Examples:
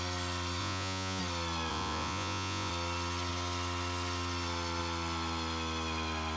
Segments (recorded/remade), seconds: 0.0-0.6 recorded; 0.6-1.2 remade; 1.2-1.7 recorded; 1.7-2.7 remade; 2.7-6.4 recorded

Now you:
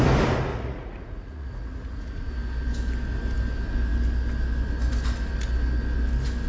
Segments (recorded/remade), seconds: 0.0-0.5 recorded; 0.5-2.3 remade; 2.3-6.5 recorded

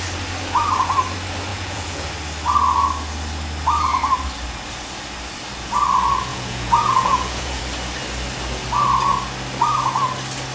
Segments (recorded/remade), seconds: 0.0-1.5 recorded; 1.5-2.1 remade; 2.1-6.3 recorded; 6.3-7.6 remade; 7.6-10.5 recorded

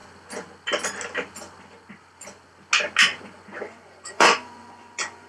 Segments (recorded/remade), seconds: 0.0-3.2 recorded; 3.2-5.3 remade

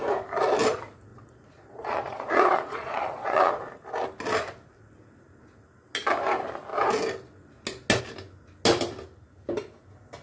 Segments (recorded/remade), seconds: 0.0-1.1 recorded; 1.1-3.5 remade; 3.5-10.2 recorded

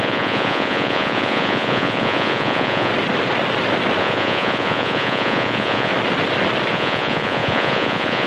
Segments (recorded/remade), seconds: 0.0-2.9 remade; 2.9-4.0 recorded; 4.0-5.9 remade; 5.9-6.7 recorded; 6.7-8.3 remade

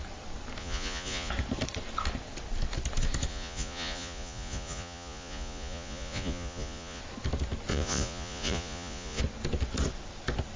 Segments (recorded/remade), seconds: 0.0-0.6 recorded; 0.6-1.3 remade; 1.3-3.3 recorded; 3.3-7.0 remade; 7.0-7.7 recorded; 7.7-9.2 remade; 9.2-10.6 recorded

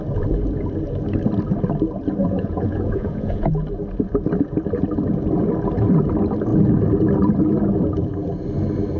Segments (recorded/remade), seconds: 0.0-2.2 recorded; 2.2-3.5 remade; 3.5-9.0 recorded